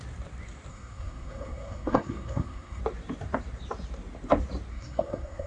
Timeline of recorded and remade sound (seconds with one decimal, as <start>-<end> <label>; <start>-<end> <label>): 0.0-0.7 recorded; 0.7-2.8 remade; 2.8-4.7 recorded; 4.7-5.5 remade